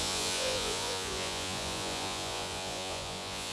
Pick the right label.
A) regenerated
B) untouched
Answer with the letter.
A